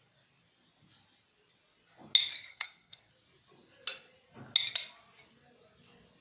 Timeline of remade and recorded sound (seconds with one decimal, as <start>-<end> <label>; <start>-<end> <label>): 0.0-2.5 recorded; 2.5-3.1 remade; 3.1-6.2 recorded